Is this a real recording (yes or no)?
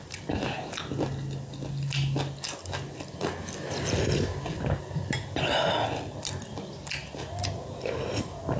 yes